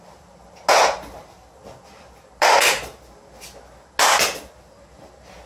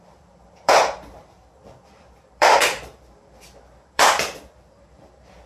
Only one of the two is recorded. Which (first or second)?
first